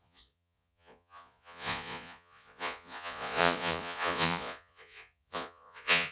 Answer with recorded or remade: remade